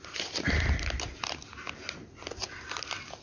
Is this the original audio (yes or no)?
yes